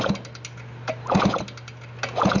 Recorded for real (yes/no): yes